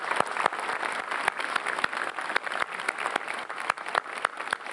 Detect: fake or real real